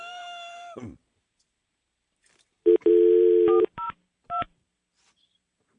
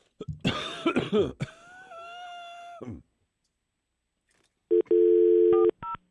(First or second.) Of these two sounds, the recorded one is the second